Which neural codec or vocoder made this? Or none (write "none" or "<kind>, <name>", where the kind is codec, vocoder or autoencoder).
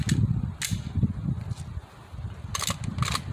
none